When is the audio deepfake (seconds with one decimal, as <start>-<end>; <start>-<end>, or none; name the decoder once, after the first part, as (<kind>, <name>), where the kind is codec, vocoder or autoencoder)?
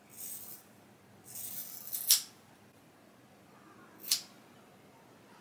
none